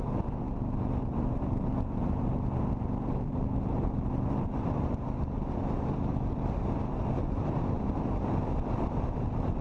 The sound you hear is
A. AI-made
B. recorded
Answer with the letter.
B